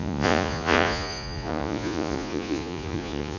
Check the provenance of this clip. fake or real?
fake